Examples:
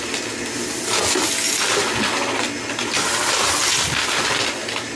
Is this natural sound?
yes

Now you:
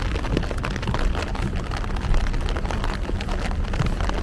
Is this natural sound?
yes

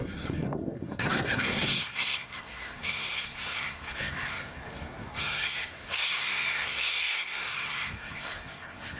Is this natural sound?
no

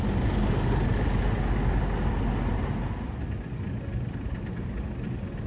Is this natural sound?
yes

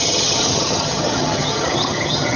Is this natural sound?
no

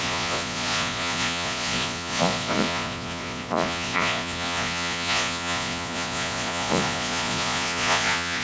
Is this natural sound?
no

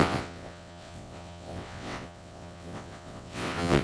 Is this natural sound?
no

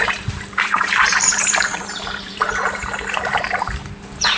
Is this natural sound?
no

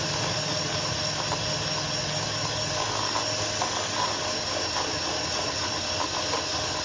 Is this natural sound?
yes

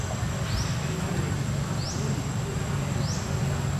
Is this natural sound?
yes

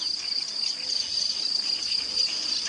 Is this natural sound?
yes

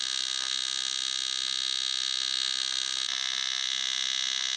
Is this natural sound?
yes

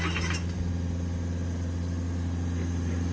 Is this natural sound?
yes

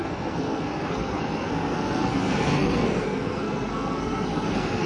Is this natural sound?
no